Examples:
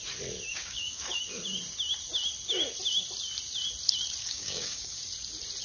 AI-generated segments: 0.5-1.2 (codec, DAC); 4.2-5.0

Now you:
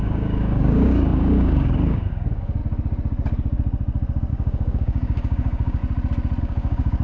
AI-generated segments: 0.0-2.6 (codec, DAC); 4.3-5.8; 6.4-7.0

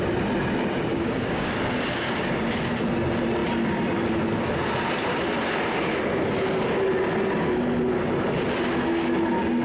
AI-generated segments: 0.9-1.5 (codec, DAC)

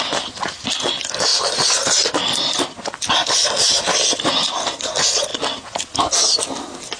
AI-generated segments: none

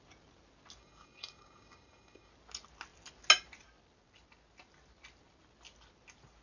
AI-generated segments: 0.8-2.3 (codec, DAC)

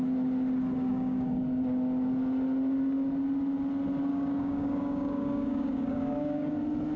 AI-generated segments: 0.9-1.4 (codec, DAC); 4.1-6.5

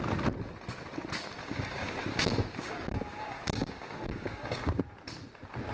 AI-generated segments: 1.4-4.8 (codec, DAC)

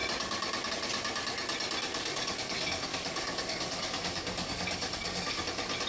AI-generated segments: 1.9-5.4 (codec, DAC)